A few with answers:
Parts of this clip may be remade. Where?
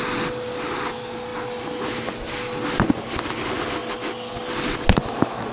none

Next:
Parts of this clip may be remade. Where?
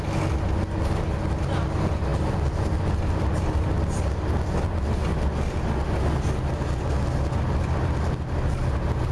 none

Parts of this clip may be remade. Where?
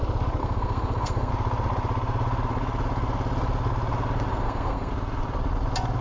0.4-1.3 (codec, SNAC); 4.3-4.9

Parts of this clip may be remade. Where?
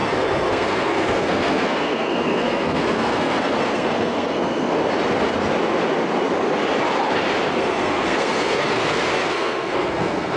0.0-4.8 (codec, SNAC); 7.5-10.4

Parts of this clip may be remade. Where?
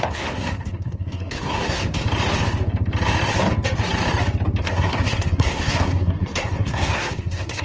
0.0-2.0 (codec, SNAC); 4.6-7.6